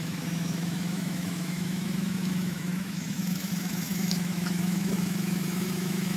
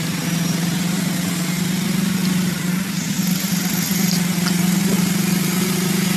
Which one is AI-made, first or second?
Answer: first